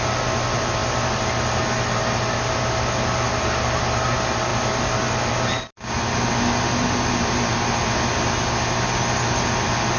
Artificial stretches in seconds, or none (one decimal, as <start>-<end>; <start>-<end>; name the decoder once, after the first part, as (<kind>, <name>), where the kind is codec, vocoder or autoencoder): none